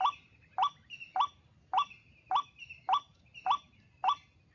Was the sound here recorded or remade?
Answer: recorded